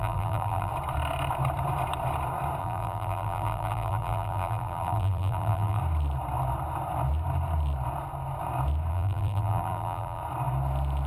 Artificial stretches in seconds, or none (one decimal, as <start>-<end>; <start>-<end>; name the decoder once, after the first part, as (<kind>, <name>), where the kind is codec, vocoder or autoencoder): 0.0-0.7 (vocoder, BigVGAN v2); 2.6-5.8; 8.9-10.2